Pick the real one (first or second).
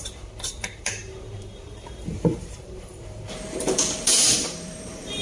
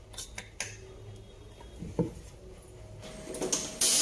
second